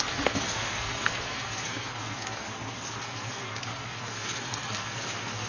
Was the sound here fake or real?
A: fake